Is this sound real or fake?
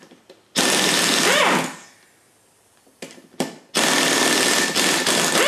real